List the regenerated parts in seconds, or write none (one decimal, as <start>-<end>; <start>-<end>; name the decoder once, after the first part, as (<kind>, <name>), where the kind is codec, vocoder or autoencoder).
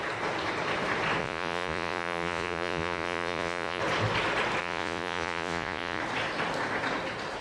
1.2-3.8 (vocoder, Vocos); 4.6-6.0